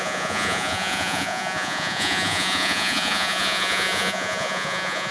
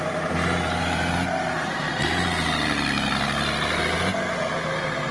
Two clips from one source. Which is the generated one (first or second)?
first